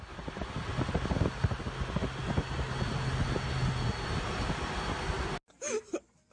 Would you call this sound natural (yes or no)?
yes